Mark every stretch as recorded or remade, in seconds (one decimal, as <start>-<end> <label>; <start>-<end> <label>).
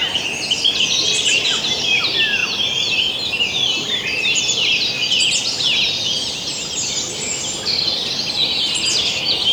0.0-9.5 recorded